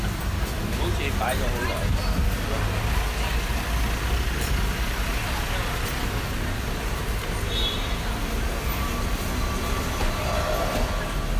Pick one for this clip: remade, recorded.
recorded